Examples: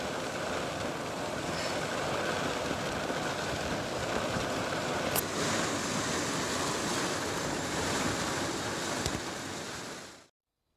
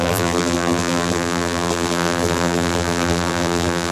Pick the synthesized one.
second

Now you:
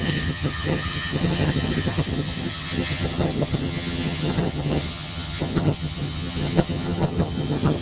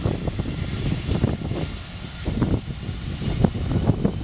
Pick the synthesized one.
first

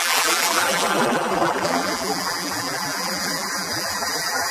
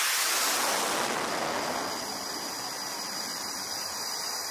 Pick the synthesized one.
first